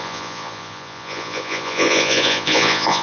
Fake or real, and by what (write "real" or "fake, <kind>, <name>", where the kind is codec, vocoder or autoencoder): fake, vocoder, Vocos